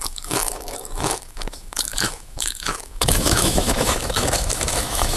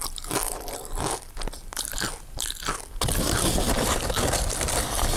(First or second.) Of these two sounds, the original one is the second